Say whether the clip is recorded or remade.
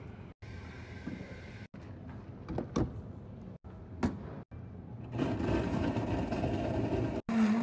recorded